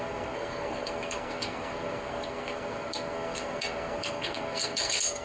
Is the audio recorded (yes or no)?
no